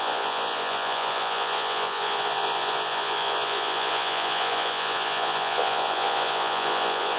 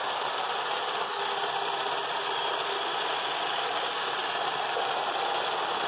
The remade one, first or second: first